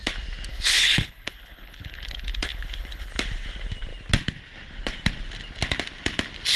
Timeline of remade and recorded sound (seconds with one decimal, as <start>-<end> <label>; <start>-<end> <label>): 0.0-0.5 recorded; 0.5-3.1 remade; 3.1-6.6 recorded